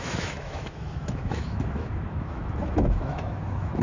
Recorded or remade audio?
remade